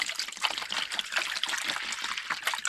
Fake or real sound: real